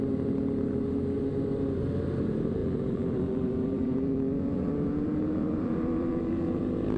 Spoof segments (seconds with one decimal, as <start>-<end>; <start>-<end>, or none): 2.6-6.6